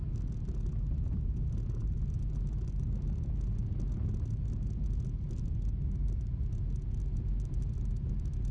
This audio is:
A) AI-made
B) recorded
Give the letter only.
B